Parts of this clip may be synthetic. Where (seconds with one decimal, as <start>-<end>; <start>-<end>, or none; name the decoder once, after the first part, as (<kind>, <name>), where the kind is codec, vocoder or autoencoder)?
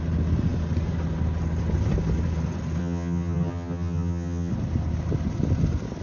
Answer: 2.8-4.5 (vocoder, HiFi-GAN)